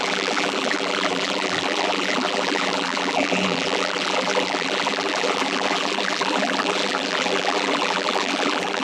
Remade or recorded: remade